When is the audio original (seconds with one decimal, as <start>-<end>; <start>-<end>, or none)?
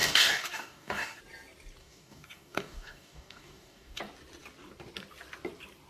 1.2-1.8; 4.0-5.9